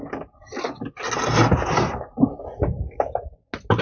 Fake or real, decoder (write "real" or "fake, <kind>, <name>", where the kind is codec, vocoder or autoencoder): real